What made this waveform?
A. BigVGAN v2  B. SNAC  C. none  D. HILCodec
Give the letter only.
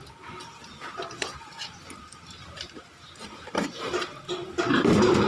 A